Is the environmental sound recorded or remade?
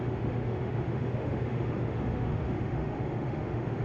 remade